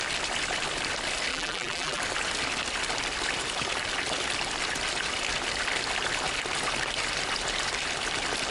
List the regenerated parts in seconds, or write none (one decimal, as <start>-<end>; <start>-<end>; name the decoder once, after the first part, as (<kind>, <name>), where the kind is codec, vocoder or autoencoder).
1.3-2.0 (vocoder, BigVGAN v2)